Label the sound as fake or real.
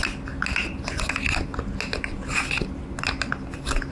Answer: real